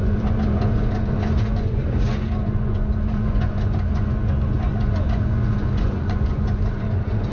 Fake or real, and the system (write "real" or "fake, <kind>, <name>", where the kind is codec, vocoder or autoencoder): fake, vocoder, Vocos